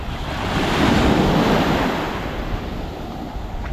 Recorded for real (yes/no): yes